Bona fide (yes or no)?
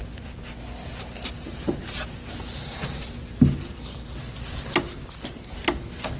yes